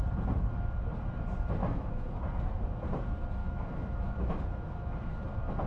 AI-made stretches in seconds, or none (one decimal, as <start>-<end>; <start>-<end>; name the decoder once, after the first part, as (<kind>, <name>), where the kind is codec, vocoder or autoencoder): 1.6-2.2 (autoencoder, DAC-VAE); 3.4-5.2